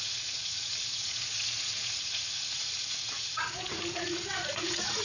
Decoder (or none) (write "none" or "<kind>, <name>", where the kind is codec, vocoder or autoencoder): vocoder, Vocos